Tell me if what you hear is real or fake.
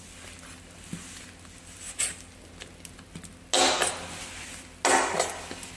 real